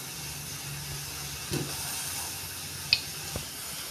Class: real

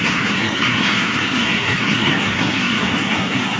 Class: fake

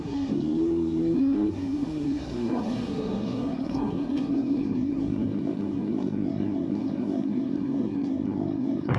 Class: fake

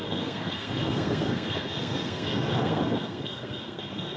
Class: fake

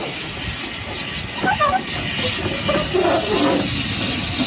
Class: real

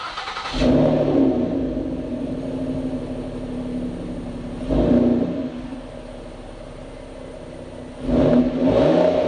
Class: real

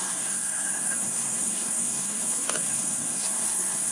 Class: fake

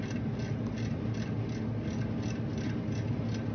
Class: real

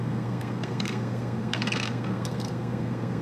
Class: fake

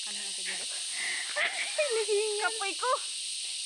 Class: real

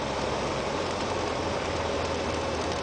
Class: real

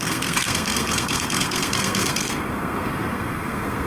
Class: fake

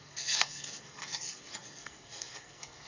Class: fake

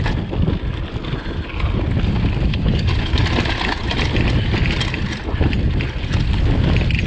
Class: real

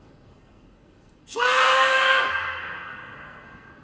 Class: fake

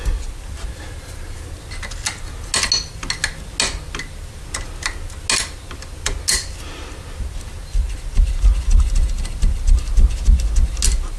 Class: real